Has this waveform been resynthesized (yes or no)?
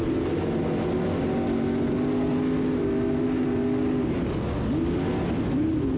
no